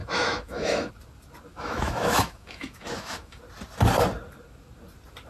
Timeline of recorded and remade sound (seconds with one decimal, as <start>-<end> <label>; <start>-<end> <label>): 0.0-0.9 remade; 0.9-1.5 recorded; 1.5-3.4 remade; 3.4-5.3 recorded